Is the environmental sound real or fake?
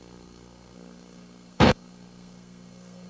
fake